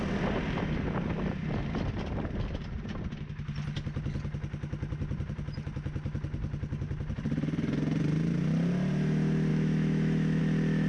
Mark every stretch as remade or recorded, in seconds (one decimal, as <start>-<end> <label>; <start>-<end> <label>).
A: 0.0-9.5 recorded; 9.5-10.4 remade; 10.4-10.9 recorded